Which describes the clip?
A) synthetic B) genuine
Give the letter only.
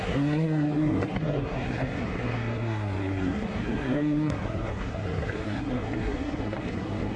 A